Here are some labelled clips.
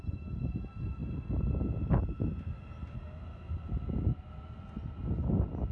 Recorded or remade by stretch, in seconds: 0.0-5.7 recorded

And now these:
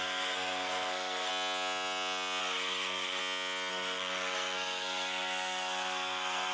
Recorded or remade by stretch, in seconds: 0.0-1.3 remade; 1.3-2.4 recorded; 2.4-3.2 remade; 3.2-3.7 recorded; 3.7-6.5 remade

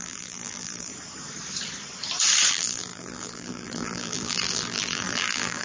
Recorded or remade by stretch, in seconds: 0.0-0.9 remade; 0.9-2.5 recorded; 2.5-5.6 remade

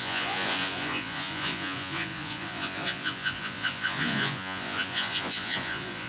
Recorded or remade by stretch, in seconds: 0.0-6.1 remade

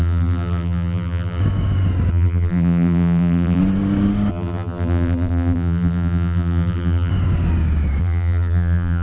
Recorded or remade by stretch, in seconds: 0.0-1.4 remade; 1.4-2.1 recorded; 2.1-3.6 remade; 3.6-4.3 recorded; 4.3-7.1 remade; 7.1-8.0 recorded; 8.0-9.0 remade

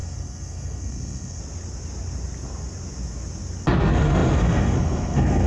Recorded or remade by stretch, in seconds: 0.0-1.4 remade; 1.4-3.8 recorded; 3.8-5.5 remade

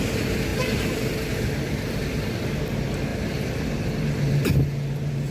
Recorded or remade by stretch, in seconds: 0.0-5.3 recorded